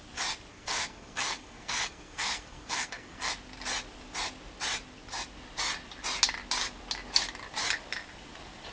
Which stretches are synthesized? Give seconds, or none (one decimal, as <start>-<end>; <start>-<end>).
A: 0.5-3.3